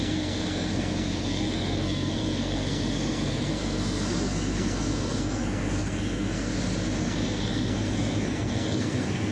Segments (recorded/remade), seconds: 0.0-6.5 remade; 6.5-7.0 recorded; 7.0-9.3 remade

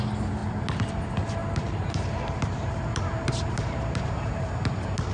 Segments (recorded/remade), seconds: 0.0-1.4 recorded; 1.4-4.5 remade; 4.5-5.1 recorded

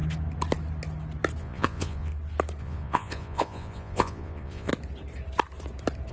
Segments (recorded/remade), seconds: 0.0-1.4 recorded; 1.4-2.1 remade; 2.1-2.6 recorded; 2.6-4.7 remade; 4.7-6.1 recorded

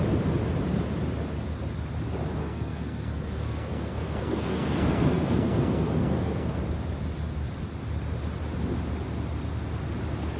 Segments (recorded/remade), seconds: 0.0-2.4 recorded; 2.4-6.6 remade; 6.6-10.4 recorded

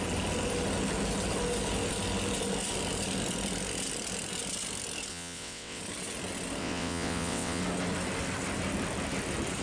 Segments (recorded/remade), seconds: 0.0-5.1 recorded; 5.1-5.8 remade; 5.8-6.6 recorded; 6.6-7.6 remade; 7.6-9.6 recorded